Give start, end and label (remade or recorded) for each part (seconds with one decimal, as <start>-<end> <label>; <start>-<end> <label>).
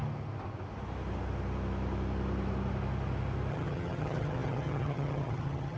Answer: 0.0-3.5 recorded; 3.5-5.8 remade